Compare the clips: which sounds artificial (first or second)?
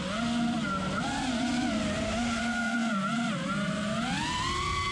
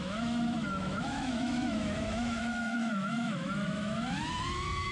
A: second